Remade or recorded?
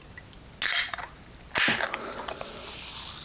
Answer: recorded